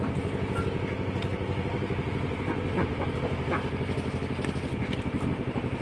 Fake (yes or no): no